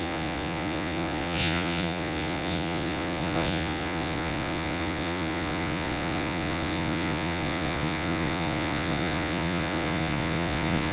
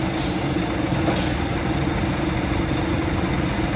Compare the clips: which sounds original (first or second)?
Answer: second